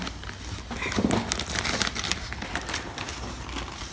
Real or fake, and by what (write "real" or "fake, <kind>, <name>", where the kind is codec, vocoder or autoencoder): real